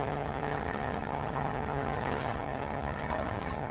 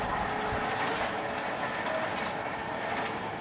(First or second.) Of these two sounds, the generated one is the first